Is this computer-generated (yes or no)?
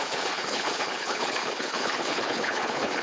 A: yes